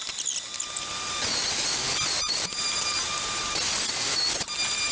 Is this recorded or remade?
recorded